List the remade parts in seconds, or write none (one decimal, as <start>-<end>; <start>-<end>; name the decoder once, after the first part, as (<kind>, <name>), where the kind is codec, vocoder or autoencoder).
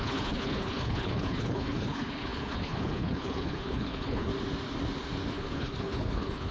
0.0-4.3 (codec, HILCodec); 5.3-6.5